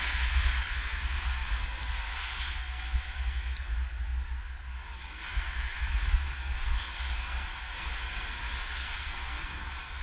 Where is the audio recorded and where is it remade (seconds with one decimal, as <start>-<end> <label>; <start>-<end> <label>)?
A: 0.0-10.0 remade